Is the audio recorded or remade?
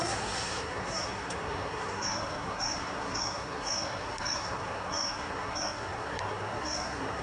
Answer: remade